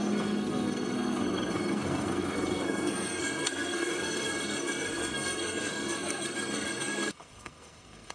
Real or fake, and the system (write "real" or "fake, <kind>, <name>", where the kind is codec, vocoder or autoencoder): fake, codec, SNAC